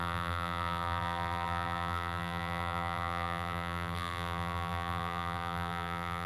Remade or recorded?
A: remade